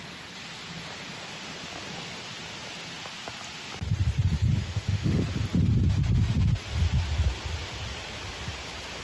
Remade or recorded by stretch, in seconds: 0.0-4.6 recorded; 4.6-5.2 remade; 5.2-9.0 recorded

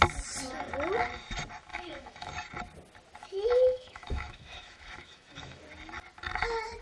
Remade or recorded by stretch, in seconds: 0.0-1.7 recorded; 1.7-2.3 remade; 2.3-3.2 recorded; 3.2-5.6 remade; 5.6-6.8 recorded

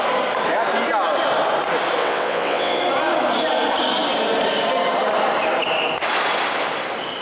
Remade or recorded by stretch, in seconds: 0.0-2.0 recorded; 2.0-2.8 remade; 2.8-7.2 recorded

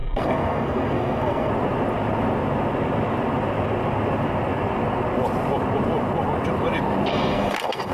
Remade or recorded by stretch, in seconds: 0.0-1.5 remade; 1.5-7.1 recorded; 7.1-7.9 remade

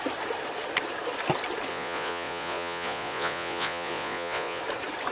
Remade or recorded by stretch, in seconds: 0.0-1.7 recorded; 1.7-4.6 remade; 4.6-5.1 recorded

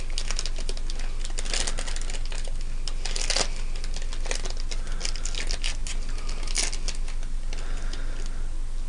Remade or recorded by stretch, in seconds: 0.0-8.9 recorded

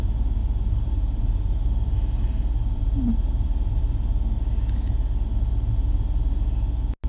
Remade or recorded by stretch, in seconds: 0.0-0.4 recorded; 0.4-3.8 remade; 3.8-7.1 recorded